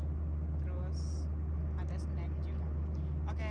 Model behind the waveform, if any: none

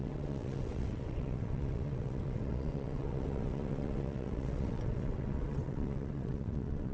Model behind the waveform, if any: vocoder, WaveNeXt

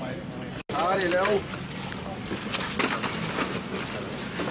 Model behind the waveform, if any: none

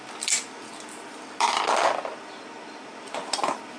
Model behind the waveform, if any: none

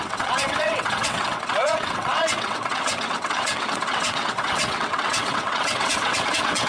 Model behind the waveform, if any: vocoder, WaveNeXt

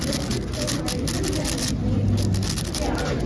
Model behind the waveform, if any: none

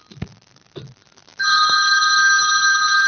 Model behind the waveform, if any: none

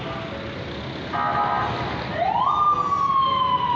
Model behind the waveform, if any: none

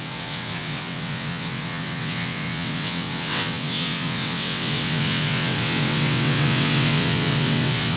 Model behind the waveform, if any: vocoder, WaveNeXt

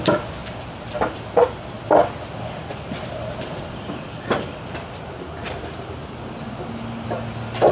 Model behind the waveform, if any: none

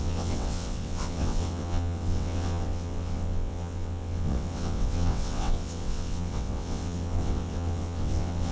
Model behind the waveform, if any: vocoder, WaveNeXt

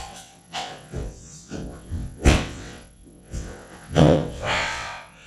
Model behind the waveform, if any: vocoder, WaveNeXt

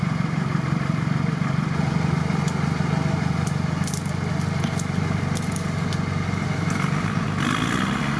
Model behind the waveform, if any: none